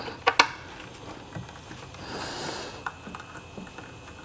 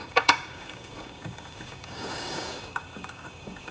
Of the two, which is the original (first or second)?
first